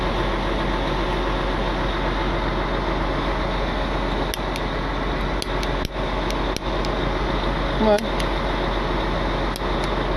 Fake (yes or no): no